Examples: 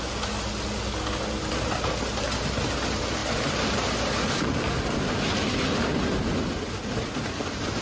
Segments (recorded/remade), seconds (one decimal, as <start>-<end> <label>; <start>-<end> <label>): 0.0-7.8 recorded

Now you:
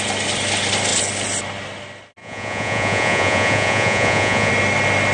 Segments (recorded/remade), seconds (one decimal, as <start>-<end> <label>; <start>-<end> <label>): 0.0-2.2 recorded; 2.2-4.5 remade; 4.5-5.1 recorded

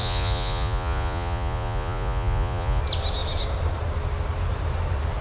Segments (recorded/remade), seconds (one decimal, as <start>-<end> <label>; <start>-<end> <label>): 0.0-2.8 remade; 2.8-5.2 recorded

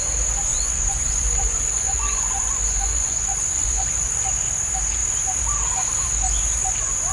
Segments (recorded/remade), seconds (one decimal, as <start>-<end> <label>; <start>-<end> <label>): 0.0-0.5 recorded; 0.5-4.1 remade; 4.1-7.1 recorded